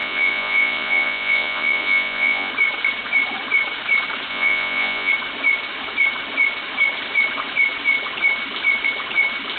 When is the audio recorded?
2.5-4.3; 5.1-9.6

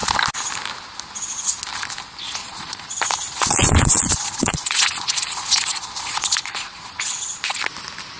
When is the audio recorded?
0.0-2.4; 7.1-8.2

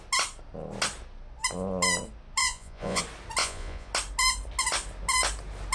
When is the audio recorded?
0.0-2.4; 3.0-3.4; 3.9-5.7